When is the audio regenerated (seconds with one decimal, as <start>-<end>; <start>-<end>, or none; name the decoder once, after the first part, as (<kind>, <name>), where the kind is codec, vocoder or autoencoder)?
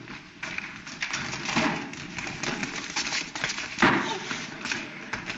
none